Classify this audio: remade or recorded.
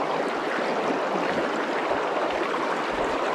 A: recorded